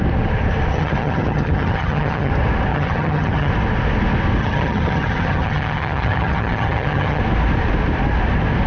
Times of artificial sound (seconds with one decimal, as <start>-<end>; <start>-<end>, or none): 0.7-2.3; 2.7-3.5; 4.4-7.2